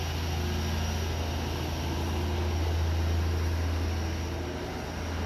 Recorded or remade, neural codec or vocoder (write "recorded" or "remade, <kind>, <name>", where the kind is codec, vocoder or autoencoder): recorded